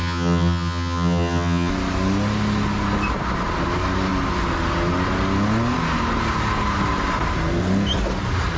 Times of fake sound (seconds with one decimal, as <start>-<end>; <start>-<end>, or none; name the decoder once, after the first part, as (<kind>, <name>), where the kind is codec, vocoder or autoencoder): 0.0-1.7 (vocoder, HiFi-GAN)